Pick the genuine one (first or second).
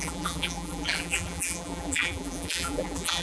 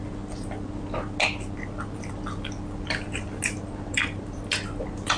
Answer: second